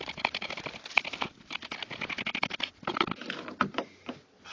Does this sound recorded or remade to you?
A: recorded